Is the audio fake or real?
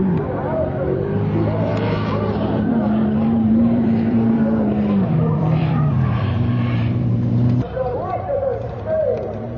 fake